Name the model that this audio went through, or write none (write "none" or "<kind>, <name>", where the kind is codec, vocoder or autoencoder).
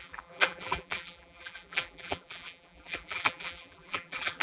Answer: vocoder, BigVGAN v2